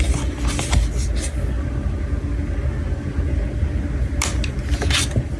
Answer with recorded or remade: recorded